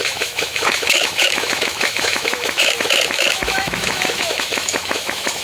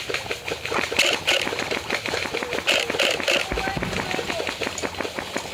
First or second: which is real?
second